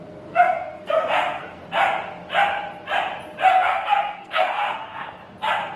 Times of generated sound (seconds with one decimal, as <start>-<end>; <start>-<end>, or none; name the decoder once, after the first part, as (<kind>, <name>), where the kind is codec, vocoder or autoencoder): 0.0-1.6 (codec, SNAC); 3.5-5.2